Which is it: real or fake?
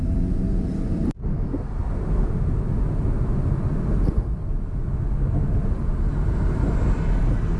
real